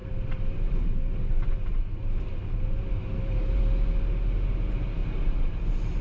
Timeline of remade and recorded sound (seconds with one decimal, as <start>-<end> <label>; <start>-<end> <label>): 0.0-3.6 remade; 3.6-5.0 recorded; 5.0-6.0 remade